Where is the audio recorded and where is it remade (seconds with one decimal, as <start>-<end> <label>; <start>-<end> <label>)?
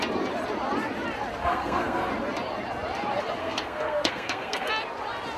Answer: 0.0-1.4 recorded; 1.4-2.1 remade; 2.1-3.4 recorded; 3.4-4.7 remade; 4.7-5.4 recorded